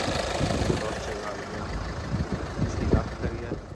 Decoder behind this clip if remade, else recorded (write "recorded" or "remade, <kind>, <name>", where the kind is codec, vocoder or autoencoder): recorded